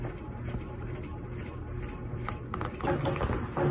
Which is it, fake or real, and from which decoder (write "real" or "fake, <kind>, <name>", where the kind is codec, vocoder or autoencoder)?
real